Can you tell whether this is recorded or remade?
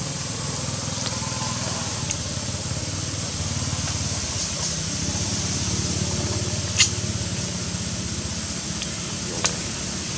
recorded